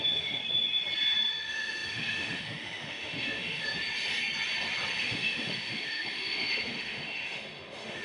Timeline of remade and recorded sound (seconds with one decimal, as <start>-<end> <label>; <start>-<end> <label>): 0.0-0.4 remade; 0.4-1.3 recorded; 1.3-3.7 remade; 3.7-5.0 recorded; 5.0-8.0 remade